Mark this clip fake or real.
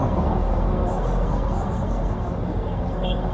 fake